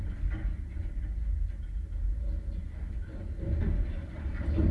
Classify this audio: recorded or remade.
recorded